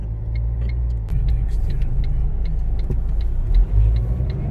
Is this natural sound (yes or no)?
yes